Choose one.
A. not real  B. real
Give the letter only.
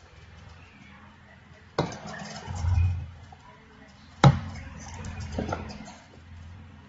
A